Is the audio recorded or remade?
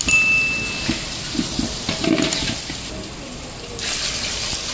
recorded